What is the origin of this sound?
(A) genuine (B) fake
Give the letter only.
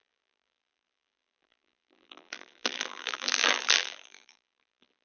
B